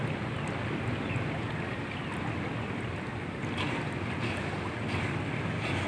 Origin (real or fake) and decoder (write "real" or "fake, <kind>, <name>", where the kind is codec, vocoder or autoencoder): real